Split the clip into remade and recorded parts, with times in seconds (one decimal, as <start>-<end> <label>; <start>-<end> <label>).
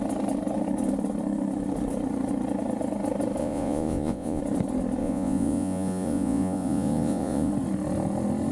0.0-3.4 recorded; 3.4-4.4 remade; 4.4-5.0 recorded; 5.0-7.5 remade; 7.5-8.5 recorded